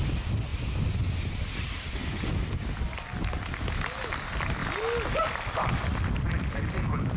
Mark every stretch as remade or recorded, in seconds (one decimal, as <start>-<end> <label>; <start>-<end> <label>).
0.0-7.2 recorded